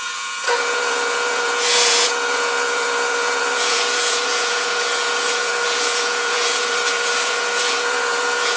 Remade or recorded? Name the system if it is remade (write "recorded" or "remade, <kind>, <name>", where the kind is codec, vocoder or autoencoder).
remade, vocoder, Vocos